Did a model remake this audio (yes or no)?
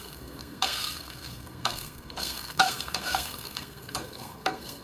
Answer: yes